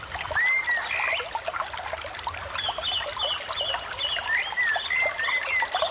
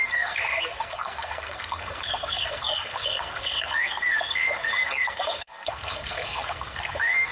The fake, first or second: second